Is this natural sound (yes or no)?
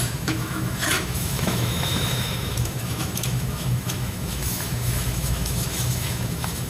no